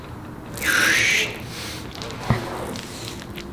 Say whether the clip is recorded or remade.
recorded